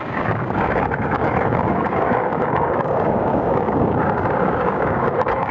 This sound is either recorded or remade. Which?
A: remade